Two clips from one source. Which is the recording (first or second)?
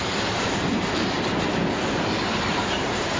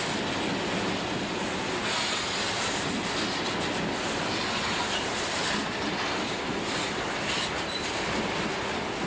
second